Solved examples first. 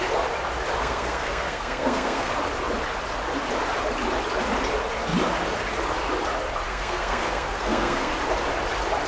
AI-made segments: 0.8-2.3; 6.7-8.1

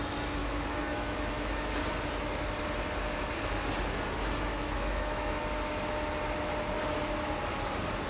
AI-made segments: 0.4-1.7; 4.5-5.4

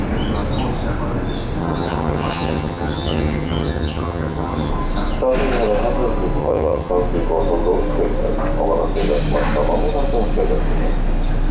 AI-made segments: 1.6-4.7; 6.4-6.9

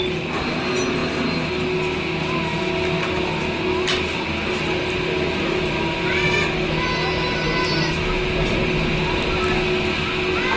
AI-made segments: none

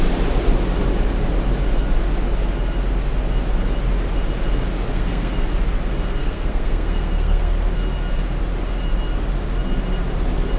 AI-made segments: 4.9-5.4; 6.2-7.5

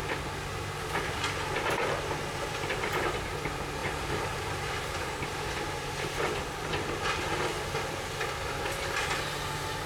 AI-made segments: 3.8-6.7

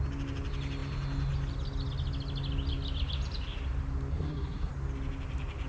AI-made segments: 4.1-4.7